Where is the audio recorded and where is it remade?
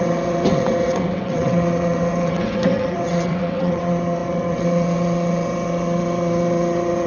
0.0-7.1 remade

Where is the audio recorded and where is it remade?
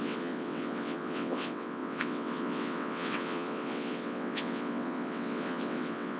0.0-6.2 remade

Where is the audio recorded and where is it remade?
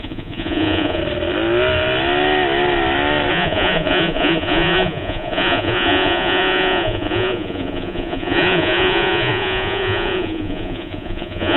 0.0-1.0 remade; 1.0-3.3 recorded; 3.3-11.6 remade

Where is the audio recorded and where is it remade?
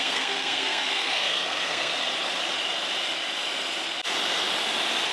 0.0-1.9 remade; 1.9-5.1 recorded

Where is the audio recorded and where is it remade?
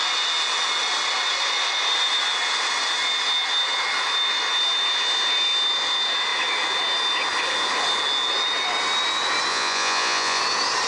0.0-9.5 recorded; 9.5-10.4 remade; 10.4-10.9 recorded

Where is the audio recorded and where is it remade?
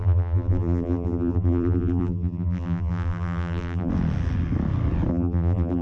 0.0-3.9 remade; 3.9-5.1 recorded; 5.1-5.8 remade